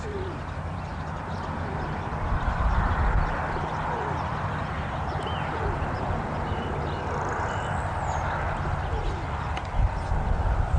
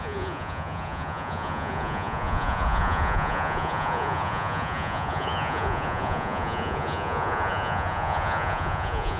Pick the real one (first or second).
first